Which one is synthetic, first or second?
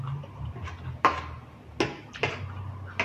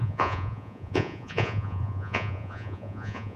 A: second